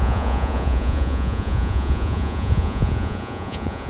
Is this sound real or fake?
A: fake